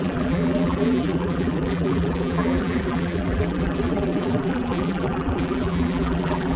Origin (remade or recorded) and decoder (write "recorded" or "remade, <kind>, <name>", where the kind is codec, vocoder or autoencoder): remade, vocoder, BigVGAN v2